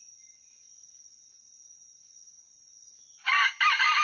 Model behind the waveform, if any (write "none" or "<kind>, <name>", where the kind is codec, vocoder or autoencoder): none